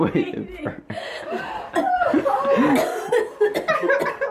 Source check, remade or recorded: recorded